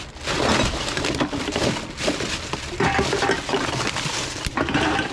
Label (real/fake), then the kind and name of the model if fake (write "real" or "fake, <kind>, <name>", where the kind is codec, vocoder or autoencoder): real